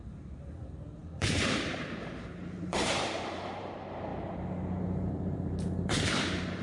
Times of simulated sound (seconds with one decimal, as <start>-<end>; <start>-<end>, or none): 0.0-6.6